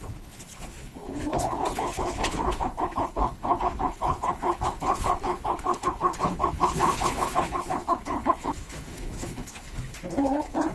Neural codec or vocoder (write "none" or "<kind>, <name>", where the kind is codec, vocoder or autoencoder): codec, HILCodec